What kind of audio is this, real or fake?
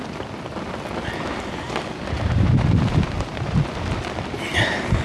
fake